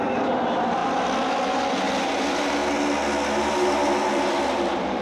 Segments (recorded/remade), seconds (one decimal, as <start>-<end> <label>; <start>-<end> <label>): 0.0-0.8 remade; 0.8-2.0 recorded; 2.0-2.6 remade; 2.6-3.4 recorded; 3.4-5.0 remade